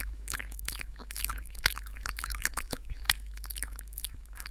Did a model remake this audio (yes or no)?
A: yes